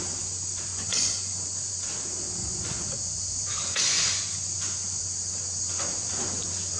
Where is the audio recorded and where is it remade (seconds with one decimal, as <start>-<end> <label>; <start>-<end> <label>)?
0.0-0.7 recorded; 0.7-1.6 remade; 1.6-2.4 recorded; 2.4-5.0 remade; 5.0-6.8 recorded